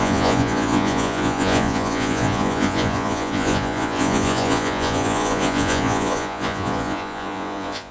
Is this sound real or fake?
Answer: fake